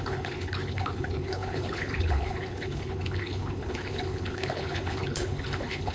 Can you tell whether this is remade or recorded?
remade